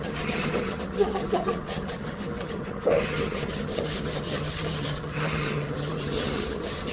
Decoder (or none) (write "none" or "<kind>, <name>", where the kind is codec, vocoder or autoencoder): vocoder, HiFi-GAN